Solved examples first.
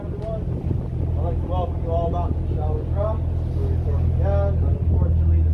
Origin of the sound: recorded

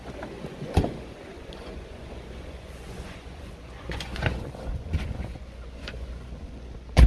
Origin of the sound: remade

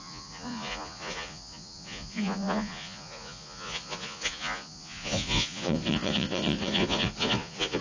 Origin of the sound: remade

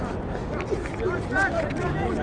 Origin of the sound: recorded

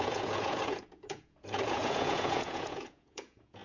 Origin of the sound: remade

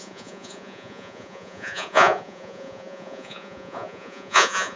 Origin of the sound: remade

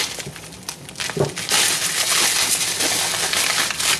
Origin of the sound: recorded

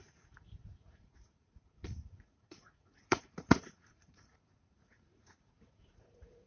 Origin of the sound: remade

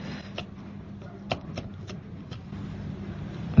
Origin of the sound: recorded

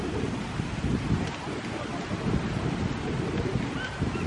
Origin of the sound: recorded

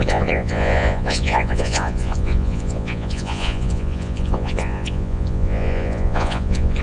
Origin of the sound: remade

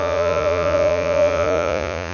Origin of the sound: remade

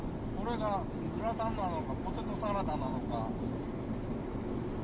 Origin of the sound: recorded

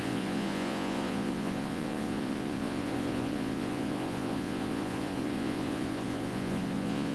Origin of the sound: remade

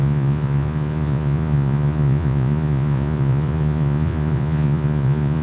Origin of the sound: remade